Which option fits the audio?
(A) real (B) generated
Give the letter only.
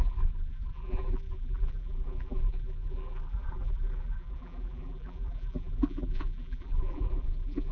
B